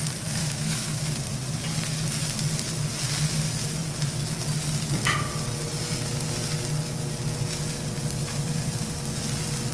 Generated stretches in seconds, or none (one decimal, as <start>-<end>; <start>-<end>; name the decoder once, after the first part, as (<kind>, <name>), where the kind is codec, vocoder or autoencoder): 0.4-1.2 (autoencoder, DAC-VAE)